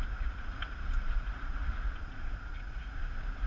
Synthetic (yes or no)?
yes